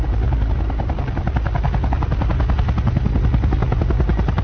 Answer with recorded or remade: recorded